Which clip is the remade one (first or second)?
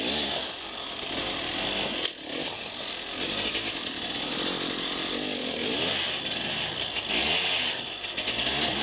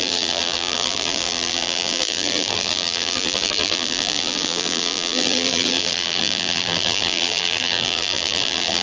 second